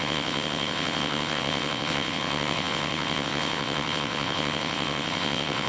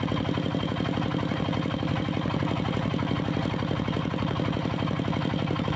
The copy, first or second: first